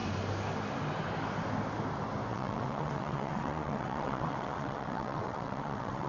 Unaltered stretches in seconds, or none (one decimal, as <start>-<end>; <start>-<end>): 0.0-2.3